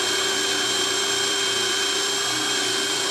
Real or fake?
fake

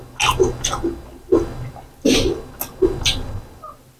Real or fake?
real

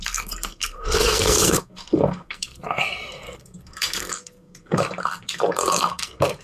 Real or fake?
fake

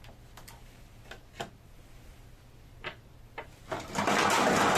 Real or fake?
real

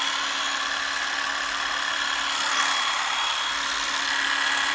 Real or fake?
real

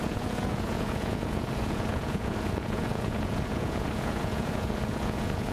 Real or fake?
fake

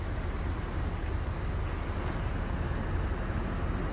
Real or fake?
real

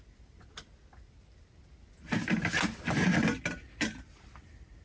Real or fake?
real